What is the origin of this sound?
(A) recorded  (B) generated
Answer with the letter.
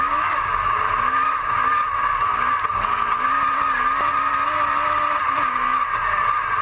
A